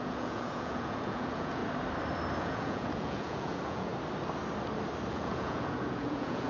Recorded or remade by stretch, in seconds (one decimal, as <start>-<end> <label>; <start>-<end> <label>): 0.0-1.6 remade; 1.6-2.4 recorded; 2.4-3.9 remade; 3.9-5.1 recorded; 5.1-6.5 remade